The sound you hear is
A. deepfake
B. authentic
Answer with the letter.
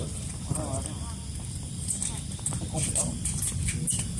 B